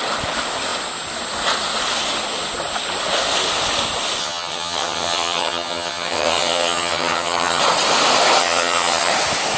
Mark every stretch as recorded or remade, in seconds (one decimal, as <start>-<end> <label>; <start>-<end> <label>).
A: 0.0-4.2 recorded; 4.2-7.6 remade; 7.6-8.4 recorded; 8.4-9.1 remade; 9.1-9.6 recorded

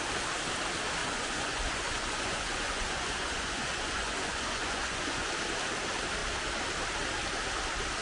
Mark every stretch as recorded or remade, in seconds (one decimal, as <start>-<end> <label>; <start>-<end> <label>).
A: 0.0-1.0 recorded; 1.0-5.3 remade; 5.3-8.0 recorded

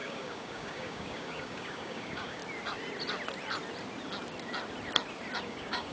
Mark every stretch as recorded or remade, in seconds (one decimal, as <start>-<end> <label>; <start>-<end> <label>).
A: 0.0-2.4 remade; 2.4-5.4 recorded; 5.4-5.9 remade

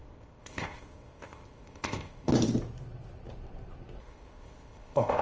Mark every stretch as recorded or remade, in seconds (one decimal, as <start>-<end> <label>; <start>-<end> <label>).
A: 0.0-2.3 remade; 2.3-4.0 recorded; 4.0-5.2 remade

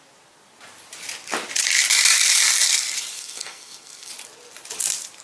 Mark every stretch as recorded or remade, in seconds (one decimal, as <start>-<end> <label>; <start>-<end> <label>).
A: 0.0-3.1 recorded; 3.1-4.1 remade; 4.1-5.2 recorded